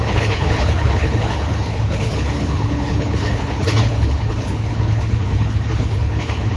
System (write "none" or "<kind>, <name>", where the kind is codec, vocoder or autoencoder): codec, HILCodec